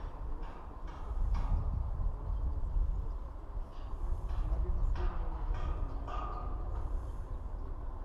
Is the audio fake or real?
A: real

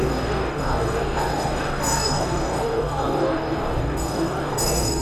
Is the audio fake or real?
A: fake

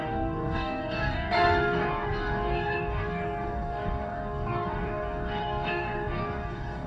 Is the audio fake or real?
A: fake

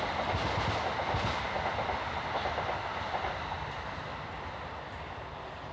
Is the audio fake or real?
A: real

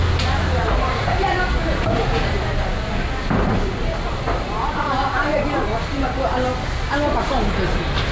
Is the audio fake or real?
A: real